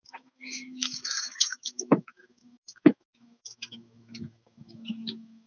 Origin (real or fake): fake